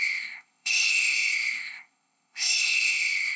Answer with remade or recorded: remade